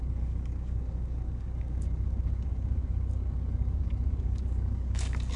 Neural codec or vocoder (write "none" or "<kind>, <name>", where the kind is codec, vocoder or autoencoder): codec, DAC